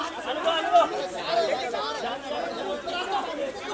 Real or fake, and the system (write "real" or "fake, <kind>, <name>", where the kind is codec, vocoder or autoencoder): real